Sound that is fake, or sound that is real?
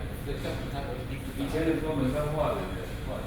real